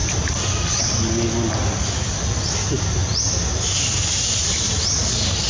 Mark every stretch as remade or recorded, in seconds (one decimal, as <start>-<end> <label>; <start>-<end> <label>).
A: 0.0-5.5 recorded